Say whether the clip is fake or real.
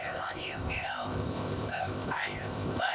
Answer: fake